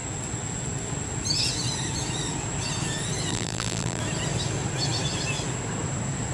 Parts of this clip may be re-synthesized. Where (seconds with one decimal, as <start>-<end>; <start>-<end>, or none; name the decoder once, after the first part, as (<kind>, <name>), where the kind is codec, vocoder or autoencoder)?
3.3-4.0 (vocoder, BigVGAN v2)